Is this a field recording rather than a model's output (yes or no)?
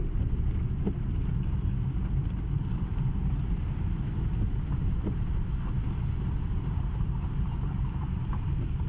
yes